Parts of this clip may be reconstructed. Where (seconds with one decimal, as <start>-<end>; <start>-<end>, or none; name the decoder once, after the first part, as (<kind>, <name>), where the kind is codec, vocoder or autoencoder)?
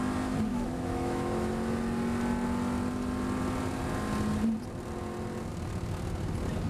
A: 0.5-1.5 (autoencoder, DAC-VAE)